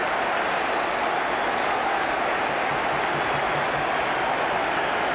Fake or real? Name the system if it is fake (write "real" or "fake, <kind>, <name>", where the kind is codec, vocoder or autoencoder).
real